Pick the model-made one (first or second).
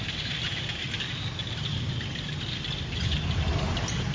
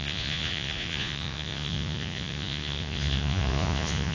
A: second